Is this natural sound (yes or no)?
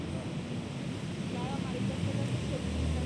yes